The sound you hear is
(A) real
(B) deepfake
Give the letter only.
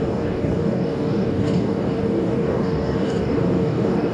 B